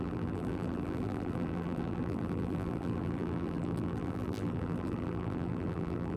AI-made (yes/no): yes